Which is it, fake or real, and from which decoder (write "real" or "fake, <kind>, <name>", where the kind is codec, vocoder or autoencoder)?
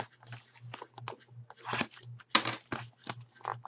real